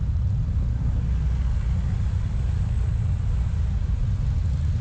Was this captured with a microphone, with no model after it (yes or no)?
yes